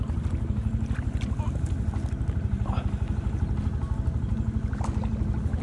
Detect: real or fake real